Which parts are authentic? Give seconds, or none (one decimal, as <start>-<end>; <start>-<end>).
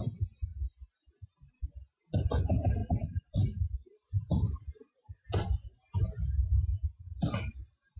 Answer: 0.0-2.8; 5.2-8.0